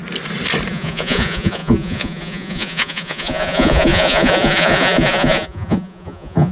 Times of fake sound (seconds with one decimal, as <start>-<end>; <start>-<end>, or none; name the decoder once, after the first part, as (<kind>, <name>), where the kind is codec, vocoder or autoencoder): 0.7-6.5 (vocoder, Vocos)

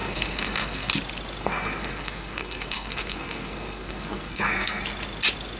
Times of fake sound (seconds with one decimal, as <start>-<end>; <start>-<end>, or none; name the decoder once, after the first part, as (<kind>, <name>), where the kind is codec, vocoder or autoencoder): 0.0-0.9 (codec, SNAC); 1.4-4.8

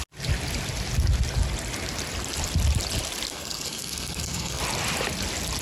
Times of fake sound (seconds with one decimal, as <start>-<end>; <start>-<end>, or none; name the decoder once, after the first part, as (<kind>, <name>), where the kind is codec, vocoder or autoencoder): 3.3-4.6 (codec, SNAC)

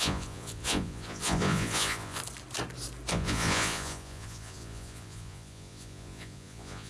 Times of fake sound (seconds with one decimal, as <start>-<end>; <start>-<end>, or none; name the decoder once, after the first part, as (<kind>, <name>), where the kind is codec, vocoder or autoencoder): 0.0-2.2 (vocoder, Vocos); 3.1-6.9

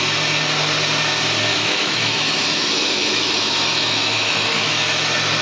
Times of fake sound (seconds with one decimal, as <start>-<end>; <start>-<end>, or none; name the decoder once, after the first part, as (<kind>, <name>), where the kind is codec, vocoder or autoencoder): 1.5-4.7 (autoencoder, DAC-VAE)